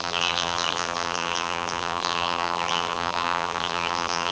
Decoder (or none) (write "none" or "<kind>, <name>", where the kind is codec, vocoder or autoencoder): vocoder, BigVGAN v2